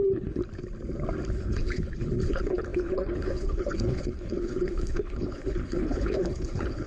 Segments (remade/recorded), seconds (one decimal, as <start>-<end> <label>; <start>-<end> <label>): 0.0-0.4 remade; 0.4-1.3 recorded; 1.3-6.9 remade